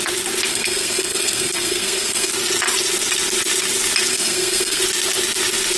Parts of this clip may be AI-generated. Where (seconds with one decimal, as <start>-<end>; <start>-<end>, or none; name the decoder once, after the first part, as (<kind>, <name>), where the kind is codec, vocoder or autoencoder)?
0.5-2.3 (codec, SNAC); 4.1-4.8